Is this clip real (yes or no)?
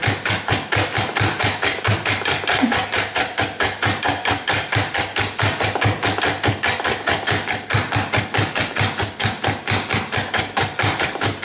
yes